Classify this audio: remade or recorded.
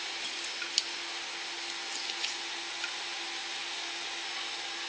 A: recorded